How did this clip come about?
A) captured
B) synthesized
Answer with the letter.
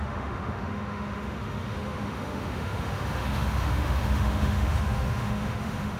B